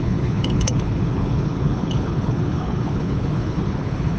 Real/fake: fake